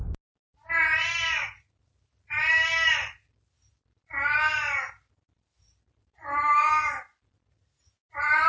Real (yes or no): yes